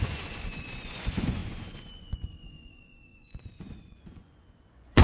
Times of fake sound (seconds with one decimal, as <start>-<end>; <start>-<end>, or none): 0.0-5.0